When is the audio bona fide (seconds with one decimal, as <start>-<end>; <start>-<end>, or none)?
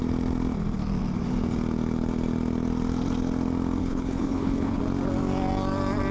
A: 0.0-3.8; 4.8-6.1